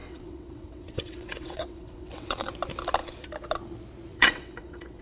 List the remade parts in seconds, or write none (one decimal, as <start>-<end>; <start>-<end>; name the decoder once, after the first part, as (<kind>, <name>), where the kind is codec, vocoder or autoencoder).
0.0-2.5 (vocoder, WaveNeXt); 4.1-5.0